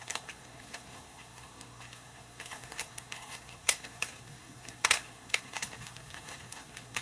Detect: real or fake fake